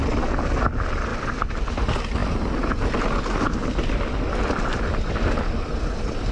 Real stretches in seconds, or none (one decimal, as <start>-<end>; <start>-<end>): 0.0-2.2